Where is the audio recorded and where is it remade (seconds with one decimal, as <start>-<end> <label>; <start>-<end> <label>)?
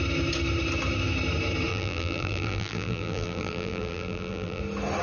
0.0-1.7 recorded; 1.7-4.6 remade; 4.6-5.0 recorded